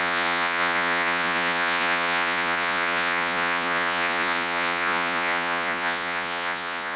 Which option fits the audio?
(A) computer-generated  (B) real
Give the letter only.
A